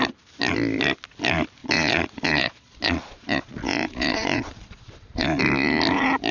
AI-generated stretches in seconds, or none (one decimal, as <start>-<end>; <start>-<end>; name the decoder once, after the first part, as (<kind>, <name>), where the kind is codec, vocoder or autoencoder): 1.6-5.4 (vocoder, Vocos)